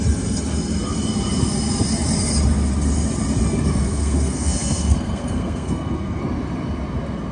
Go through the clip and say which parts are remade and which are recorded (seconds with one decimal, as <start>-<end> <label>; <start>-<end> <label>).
0.0-3.8 recorded; 3.8-6.2 remade; 6.2-7.3 recorded